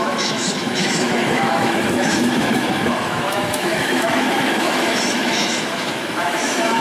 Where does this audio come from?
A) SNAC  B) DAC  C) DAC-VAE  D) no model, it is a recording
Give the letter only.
C